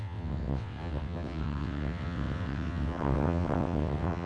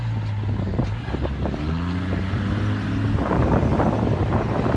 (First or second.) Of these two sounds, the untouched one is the second